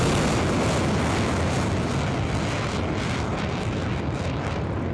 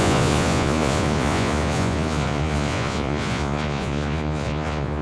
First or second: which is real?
first